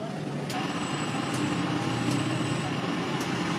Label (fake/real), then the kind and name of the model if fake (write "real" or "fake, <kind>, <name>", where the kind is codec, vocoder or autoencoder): real